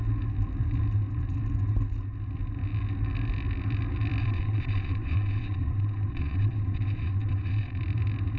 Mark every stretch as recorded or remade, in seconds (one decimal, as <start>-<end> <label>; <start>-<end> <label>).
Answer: 0.0-4.2 recorded; 4.2-7.8 remade; 7.8-8.4 recorded